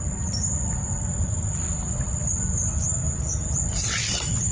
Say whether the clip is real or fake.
fake